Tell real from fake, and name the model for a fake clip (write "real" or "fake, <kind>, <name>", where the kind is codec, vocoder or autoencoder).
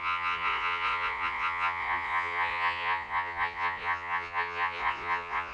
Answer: fake, vocoder, Vocos